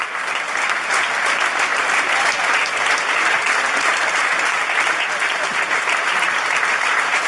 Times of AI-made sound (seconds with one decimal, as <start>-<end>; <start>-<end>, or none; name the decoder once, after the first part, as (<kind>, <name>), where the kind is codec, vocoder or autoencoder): none